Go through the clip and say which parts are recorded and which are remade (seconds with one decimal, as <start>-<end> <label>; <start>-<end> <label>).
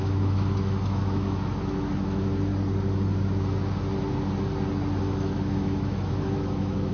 0.0-2.5 remade; 2.5-5.0 recorded; 5.0-6.9 remade